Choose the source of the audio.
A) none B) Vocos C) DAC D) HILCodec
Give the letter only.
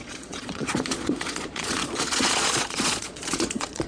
B